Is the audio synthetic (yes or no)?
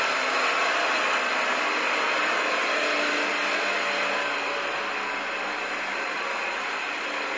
no